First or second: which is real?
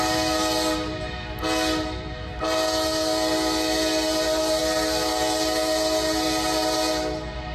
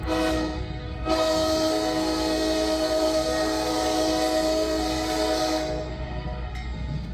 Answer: first